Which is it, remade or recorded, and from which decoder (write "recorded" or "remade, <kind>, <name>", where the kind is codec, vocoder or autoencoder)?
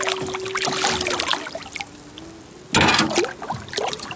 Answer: recorded